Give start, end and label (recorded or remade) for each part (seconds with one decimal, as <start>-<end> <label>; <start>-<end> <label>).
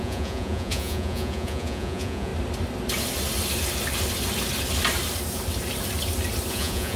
0.0-2.3 remade; 2.3-6.5 recorded; 6.5-7.0 remade